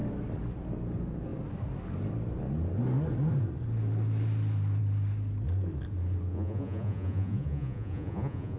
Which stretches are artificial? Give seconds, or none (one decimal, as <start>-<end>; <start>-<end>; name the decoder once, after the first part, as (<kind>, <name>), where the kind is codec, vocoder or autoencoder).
6.3-8.6 (vocoder, Vocos)